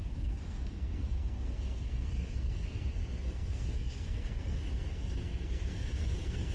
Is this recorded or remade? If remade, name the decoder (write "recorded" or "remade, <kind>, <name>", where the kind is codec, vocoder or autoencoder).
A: remade, codec, SNAC